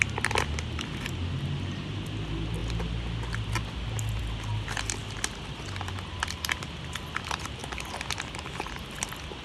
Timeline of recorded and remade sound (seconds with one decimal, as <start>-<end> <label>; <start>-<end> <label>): 0.0-9.4 recorded

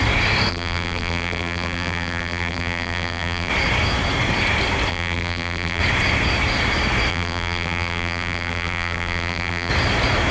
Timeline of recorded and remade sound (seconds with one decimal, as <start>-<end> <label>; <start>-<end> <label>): 0.0-0.5 recorded; 0.5-3.5 remade; 3.5-4.9 recorded; 4.9-5.8 remade; 5.8-7.1 recorded; 7.1-9.7 remade; 9.7-10.3 recorded

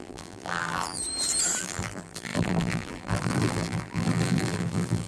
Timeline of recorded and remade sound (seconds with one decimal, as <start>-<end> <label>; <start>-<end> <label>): 0.0-1.0 remade; 1.0-1.6 recorded; 1.6-5.1 remade

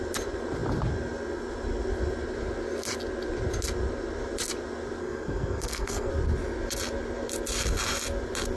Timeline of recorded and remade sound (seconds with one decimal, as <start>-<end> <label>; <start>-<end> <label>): 0.0-5.0 recorded; 5.0-6.1 remade; 6.1-8.6 recorded